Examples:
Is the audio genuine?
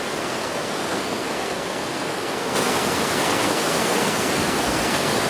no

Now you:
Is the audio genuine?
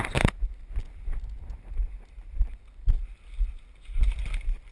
yes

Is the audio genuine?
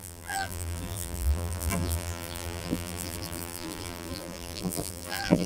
no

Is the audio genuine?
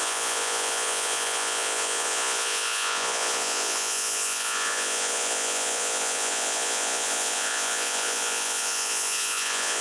no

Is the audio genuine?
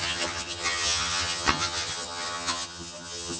no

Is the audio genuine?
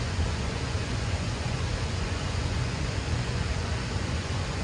no